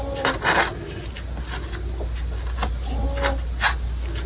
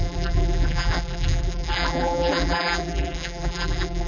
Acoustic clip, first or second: first